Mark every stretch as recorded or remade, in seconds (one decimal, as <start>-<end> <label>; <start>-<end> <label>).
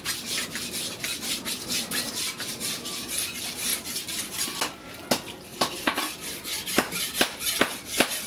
0.0-8.3 recorded